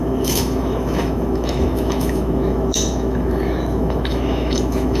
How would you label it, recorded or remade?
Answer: remade